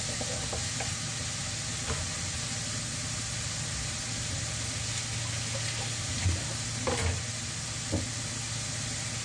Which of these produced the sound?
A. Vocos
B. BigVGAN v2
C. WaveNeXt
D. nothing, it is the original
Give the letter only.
D